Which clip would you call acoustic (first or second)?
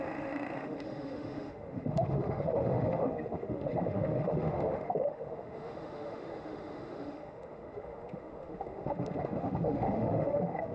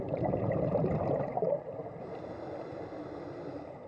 second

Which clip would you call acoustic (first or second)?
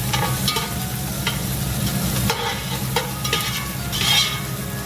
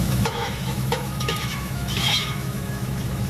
first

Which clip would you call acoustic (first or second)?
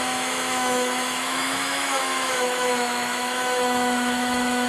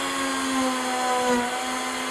second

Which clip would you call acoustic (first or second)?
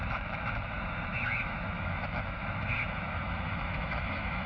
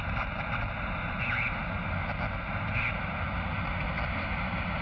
second